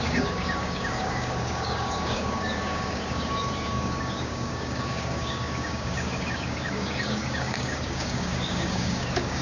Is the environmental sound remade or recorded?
remade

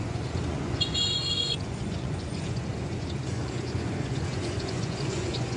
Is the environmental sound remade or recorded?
remade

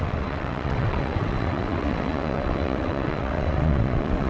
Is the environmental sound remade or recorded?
remade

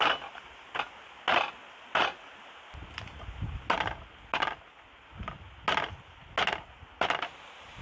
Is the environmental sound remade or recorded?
recorded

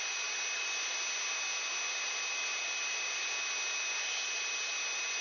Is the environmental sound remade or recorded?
recorded